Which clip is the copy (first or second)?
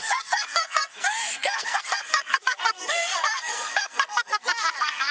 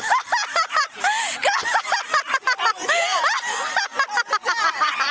first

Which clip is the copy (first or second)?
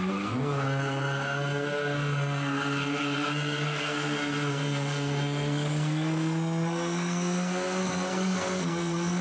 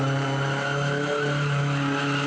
first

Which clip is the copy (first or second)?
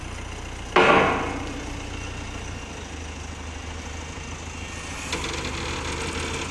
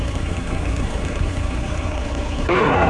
second